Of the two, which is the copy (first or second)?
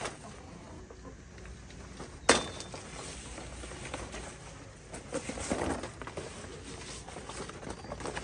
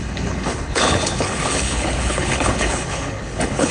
second